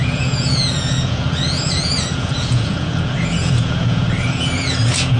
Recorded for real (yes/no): no